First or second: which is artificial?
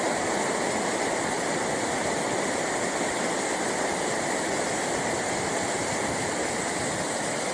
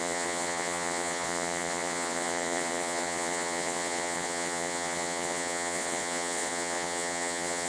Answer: second